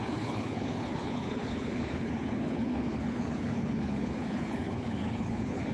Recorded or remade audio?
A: remade